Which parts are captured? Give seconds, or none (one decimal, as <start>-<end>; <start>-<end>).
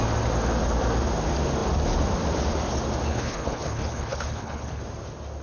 0.0-3.1; 4.8-5.4